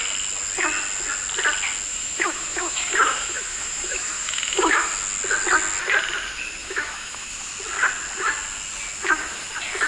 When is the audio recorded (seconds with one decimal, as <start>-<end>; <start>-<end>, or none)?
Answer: 0.0-1.9; 4.9-6.6; 7.5-9.9

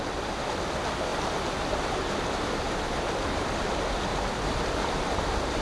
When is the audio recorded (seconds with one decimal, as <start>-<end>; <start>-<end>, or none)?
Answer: 0.0-5.6

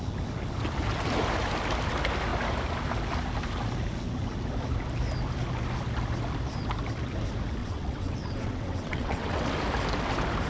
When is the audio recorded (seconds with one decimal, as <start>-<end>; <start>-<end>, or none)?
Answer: 0.0-7.6; 9.5-10.5

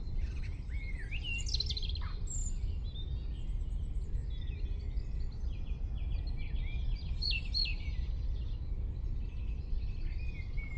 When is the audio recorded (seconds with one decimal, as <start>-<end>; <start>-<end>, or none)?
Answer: 0.0-10.8

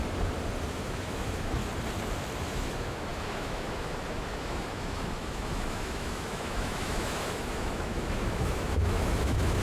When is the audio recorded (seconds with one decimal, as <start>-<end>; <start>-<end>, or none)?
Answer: 0.0-0.7; 1.6-2.4

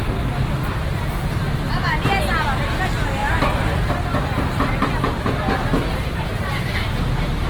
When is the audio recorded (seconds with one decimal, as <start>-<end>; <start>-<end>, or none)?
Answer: 0.0-3.2; 3.9-7.5

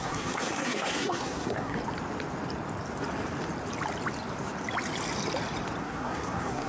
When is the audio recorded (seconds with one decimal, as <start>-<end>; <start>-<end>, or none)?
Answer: 1.8-5.8